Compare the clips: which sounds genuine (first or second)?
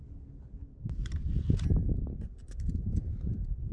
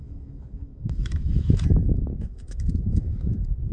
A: first